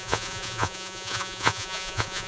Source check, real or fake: fake